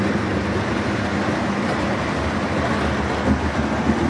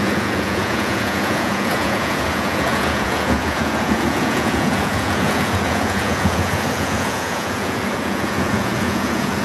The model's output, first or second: second